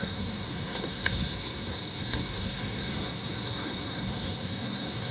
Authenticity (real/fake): fake